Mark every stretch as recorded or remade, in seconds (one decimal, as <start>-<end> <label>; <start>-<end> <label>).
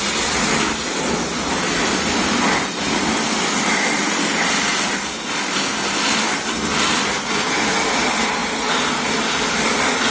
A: 0.0-10.1 recorded